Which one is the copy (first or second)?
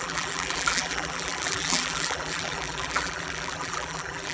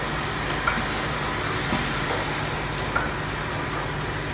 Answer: first